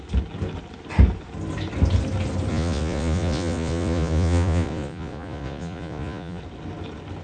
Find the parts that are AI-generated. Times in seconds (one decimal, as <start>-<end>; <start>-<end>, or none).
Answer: 2.5-6.4